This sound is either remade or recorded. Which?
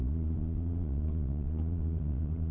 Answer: remade